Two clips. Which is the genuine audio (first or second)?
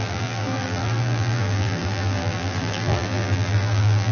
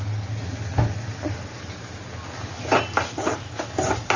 second